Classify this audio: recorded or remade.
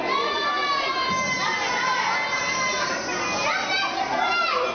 recorded